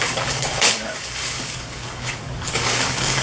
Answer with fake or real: fake